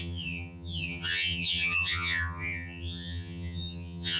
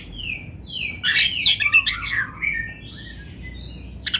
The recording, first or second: second